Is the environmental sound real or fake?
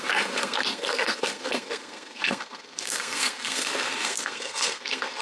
fake